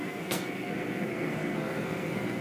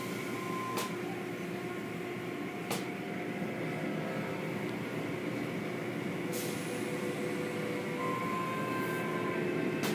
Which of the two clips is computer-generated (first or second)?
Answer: first